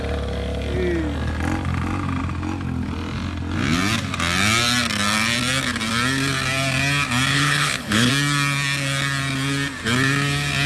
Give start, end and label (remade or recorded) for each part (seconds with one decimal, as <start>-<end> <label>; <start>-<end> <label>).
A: 0.0-7.3 recorded; 7.3-8.1 remade; 8.1-10.7 recorded